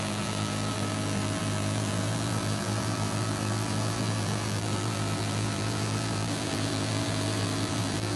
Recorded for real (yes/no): no